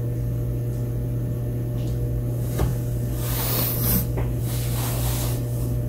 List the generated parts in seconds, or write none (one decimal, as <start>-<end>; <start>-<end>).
none